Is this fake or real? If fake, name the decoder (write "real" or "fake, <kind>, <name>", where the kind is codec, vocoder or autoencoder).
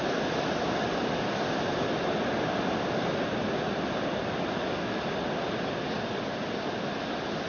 real